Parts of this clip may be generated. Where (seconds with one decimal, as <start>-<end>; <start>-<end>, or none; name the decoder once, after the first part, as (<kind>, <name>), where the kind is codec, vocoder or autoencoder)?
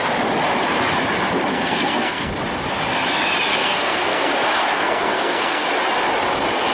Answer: 1.5-2.3 (codec, SNAC); 3.5-4.3; 4.7-5.7